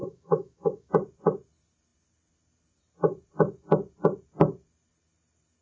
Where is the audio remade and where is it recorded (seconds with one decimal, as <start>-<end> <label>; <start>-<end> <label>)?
0.0-0.9 remade; 0.9-5.6 recorded